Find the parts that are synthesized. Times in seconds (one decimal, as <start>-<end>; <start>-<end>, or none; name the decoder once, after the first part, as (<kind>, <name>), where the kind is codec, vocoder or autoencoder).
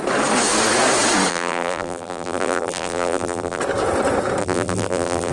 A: 1.3-3.6 (vocoder, BigVGAN v2); 4.4-5.3